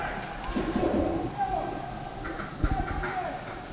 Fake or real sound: real